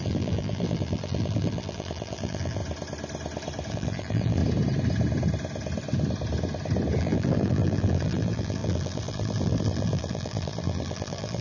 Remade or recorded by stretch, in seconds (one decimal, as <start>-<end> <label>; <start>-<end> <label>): 0.0-2.6 remade; 2.6-3.7 recorded; 3.7-4.4 remade; 4.4-7.0 recorded; 7.0-11.4 remade